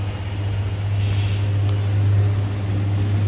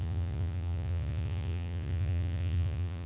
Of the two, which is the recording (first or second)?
first